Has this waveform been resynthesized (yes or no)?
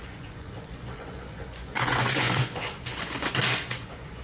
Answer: yes